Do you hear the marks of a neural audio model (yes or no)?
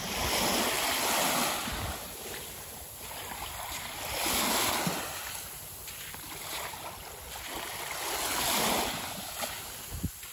no